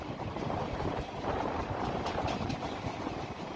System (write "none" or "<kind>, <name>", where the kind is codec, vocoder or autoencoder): vocoder, BigVGAN v2